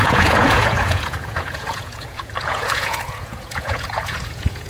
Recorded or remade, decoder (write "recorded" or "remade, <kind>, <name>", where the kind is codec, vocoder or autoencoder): remade, vocoder, Vocos